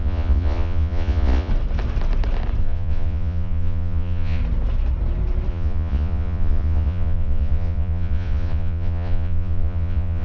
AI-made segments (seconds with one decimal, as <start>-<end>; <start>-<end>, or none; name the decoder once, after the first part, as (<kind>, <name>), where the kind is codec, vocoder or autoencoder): 0.0-1.5 (vocoder, Vocos); 2.6-4.4; 5.5-10.2